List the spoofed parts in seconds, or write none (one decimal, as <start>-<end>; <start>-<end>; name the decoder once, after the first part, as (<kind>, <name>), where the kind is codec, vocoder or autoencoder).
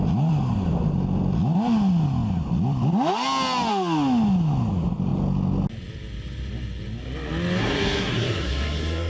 7.6-9.1 (codec, SNAC)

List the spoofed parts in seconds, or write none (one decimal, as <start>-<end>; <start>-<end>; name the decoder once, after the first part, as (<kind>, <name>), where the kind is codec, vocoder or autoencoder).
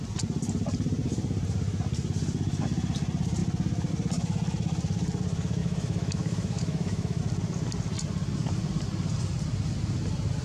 5.6-7.2 (autoencoder, DAC-VAE)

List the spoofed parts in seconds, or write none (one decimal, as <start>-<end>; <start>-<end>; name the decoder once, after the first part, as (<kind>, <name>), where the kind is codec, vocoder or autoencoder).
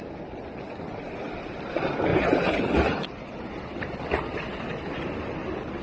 none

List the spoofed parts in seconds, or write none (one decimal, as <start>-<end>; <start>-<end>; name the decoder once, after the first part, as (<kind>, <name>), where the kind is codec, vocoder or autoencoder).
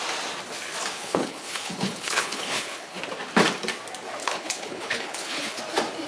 0.9-3.0 (codec, HILCodec); 4.2-5.6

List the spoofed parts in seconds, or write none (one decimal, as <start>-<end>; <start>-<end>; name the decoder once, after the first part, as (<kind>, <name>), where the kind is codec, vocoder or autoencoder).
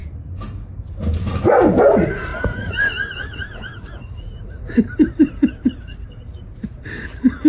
1.9-7.5 (vocoder, Vocos)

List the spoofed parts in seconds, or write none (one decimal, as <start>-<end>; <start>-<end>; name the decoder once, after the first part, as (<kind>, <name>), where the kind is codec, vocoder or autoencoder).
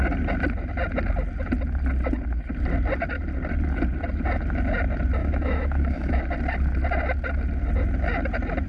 5.2-6.2 (autoencoder, DAC-VAE)